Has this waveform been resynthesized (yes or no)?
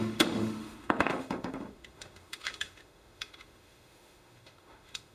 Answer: yes